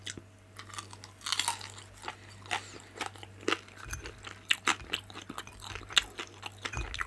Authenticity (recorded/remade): recorded